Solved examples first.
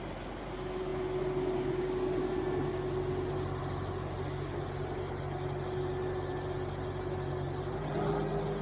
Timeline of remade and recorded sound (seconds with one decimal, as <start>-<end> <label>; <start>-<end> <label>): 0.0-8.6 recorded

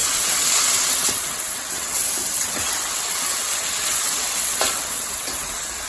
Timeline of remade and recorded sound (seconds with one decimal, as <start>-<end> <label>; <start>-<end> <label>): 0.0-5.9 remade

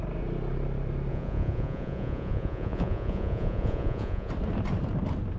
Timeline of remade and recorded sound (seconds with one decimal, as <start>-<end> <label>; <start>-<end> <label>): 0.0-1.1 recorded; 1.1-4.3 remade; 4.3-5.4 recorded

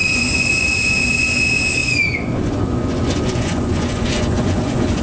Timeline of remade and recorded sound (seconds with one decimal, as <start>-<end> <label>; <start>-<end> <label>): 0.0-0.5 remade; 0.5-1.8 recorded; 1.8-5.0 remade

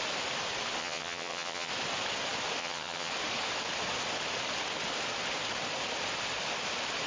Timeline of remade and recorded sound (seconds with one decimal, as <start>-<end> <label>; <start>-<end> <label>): 0.0-0.8 recorded; 0.8-1.7 remade; 1.7-2.6 recorded; 2.6-3.1 remade; 3.1-7.1 recorded

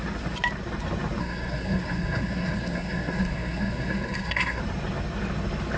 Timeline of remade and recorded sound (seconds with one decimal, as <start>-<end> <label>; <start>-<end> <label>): 0.0-1.2 recorded; 1.2-4.6 remade; 4.6-5.8 recorded

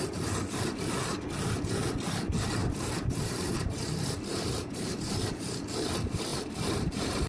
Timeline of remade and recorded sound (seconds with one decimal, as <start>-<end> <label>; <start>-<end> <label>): 0.0-2.6 recorded; 2.6-5.4 remade; 5.4-6.3 recorded; 6.3-7.3 remade

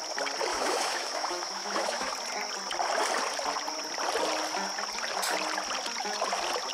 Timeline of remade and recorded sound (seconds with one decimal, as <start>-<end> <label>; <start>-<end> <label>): 0.0-0.5 recorded; 0.5-2.1 remade; 2.1-6.7 recorded